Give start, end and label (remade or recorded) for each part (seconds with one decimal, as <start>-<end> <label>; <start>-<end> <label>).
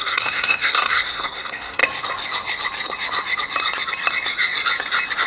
0.0-1.8 remade; 1.8-5.3 recorded